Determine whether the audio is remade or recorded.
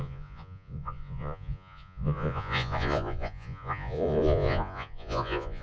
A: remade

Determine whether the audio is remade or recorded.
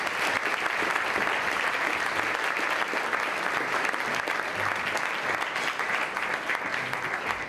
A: recorded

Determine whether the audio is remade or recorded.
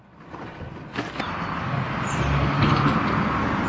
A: recorded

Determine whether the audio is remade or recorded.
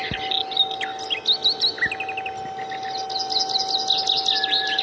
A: recorded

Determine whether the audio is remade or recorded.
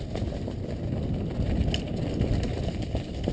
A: recorded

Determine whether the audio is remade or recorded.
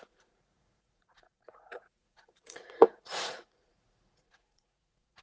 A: remade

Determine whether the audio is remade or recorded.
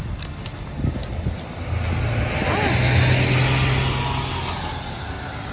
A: recorded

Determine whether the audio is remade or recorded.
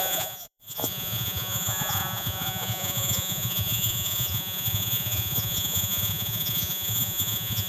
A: remade